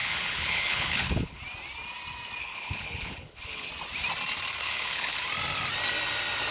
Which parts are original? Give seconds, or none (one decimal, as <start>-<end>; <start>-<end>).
1.4-2.4; 3.7-4.6; 5.2-6.5